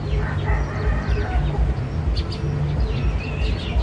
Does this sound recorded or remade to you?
recorded